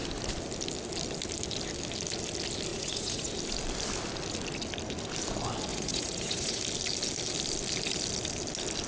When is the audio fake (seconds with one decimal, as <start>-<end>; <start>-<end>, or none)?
2.7-3.3; 5.7-6.6